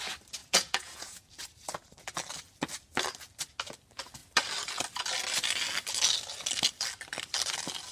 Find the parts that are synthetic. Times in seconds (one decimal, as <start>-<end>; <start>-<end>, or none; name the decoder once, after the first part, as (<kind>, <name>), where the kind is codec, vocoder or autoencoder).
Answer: 0.4-1.3 (vocoder, Vocos)